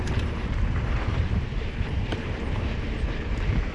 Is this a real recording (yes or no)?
no